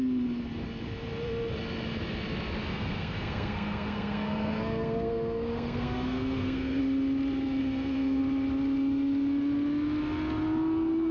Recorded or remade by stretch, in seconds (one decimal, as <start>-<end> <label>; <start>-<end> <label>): 0.0-2.7 recorded; 2.7-6.8 remade; 6.8-7.6 recorded; 7.6-8.2 remade; 8.2-11.1 recorded